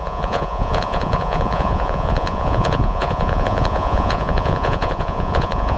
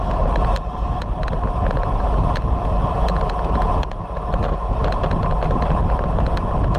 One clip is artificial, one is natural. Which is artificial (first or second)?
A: first